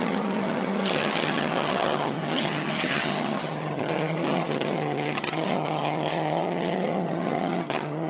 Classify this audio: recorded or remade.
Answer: remade